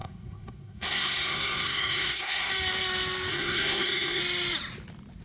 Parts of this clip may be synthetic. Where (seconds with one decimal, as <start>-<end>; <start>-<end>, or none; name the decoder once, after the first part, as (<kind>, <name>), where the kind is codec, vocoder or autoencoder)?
0.0-2.5 (codec, SNAC); 3.3-4.2